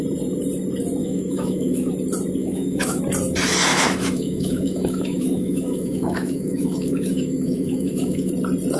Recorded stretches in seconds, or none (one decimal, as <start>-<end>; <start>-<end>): 0.0-1.0; 1.9-2.4; 3.0-3.7; 8.3-8.8